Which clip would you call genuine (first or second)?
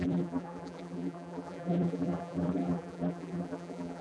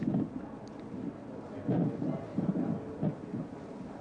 second